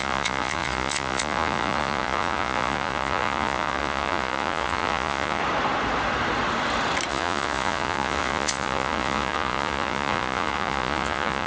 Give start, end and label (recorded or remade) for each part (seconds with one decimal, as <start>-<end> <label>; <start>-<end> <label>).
0.0-5.4 remade; 5.4-7.1 recorded; 7.1-11.5 remade